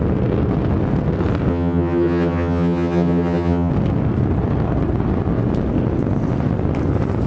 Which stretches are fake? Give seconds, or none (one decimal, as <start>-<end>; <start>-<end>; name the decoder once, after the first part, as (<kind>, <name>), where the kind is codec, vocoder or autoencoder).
1.5-3.7 (vocoder, HiFi-GAN)